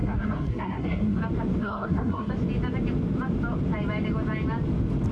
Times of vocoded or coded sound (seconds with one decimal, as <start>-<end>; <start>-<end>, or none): 0.0-1.2; 1.6-2.3